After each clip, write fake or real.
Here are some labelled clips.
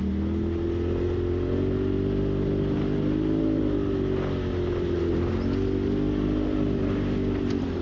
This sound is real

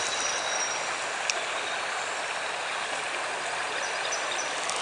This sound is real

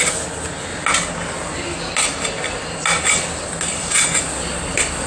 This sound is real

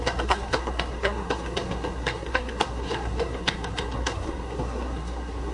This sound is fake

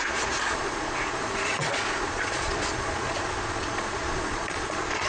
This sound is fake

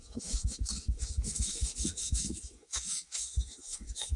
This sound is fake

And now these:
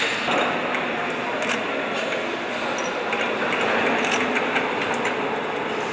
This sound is real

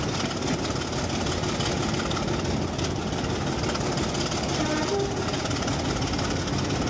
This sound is real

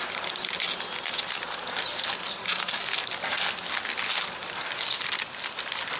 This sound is real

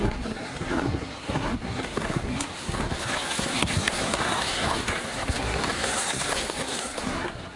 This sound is fake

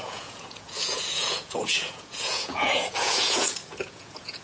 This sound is fake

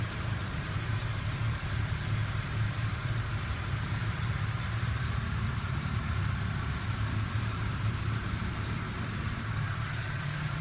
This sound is fake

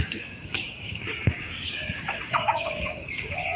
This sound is fake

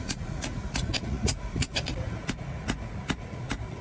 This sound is fake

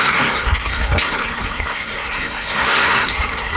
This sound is fake